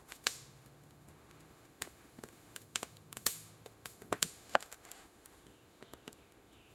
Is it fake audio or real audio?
fake